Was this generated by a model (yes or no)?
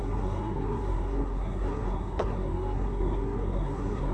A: yes